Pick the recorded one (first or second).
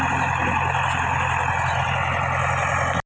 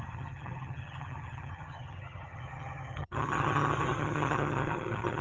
first